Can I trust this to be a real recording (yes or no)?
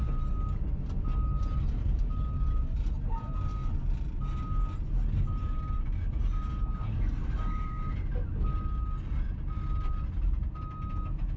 yes